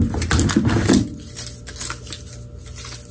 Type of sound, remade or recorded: recorded